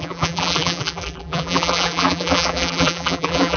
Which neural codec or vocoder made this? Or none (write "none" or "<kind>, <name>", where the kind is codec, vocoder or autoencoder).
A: vocoder, BigVGAN v2